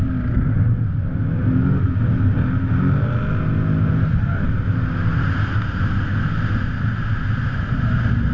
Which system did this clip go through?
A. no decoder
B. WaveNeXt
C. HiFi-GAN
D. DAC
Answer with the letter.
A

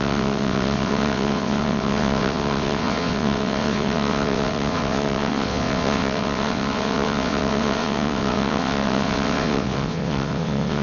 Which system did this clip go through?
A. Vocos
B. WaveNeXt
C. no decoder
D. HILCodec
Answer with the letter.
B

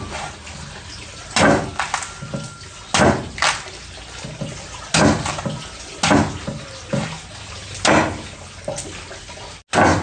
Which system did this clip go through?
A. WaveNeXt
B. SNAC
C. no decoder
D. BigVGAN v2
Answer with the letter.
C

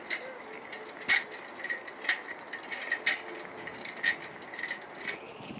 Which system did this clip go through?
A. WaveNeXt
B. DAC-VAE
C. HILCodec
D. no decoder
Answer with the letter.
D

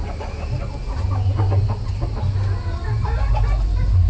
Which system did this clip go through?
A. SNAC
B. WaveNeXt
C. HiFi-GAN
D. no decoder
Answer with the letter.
D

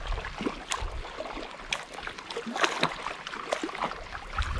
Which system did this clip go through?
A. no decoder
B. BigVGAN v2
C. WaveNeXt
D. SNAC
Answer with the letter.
A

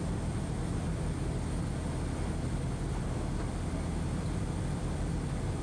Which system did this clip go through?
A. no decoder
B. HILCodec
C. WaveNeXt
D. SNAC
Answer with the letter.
A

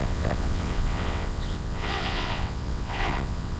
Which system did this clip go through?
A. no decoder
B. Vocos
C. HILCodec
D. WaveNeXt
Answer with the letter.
D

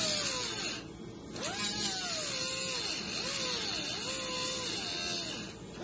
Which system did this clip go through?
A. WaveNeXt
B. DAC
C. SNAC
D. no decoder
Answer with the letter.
D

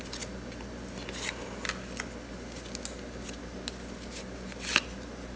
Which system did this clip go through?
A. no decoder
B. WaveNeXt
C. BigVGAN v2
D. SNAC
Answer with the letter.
A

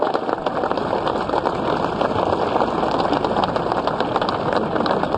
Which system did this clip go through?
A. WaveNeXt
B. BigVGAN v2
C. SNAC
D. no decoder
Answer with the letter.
D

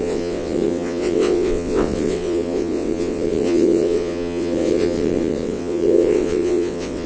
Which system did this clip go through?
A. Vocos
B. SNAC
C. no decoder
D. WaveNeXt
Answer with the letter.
D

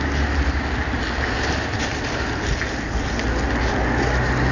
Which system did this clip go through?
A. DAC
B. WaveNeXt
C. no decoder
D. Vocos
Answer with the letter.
C